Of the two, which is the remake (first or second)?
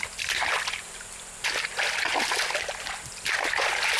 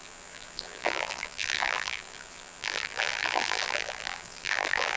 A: second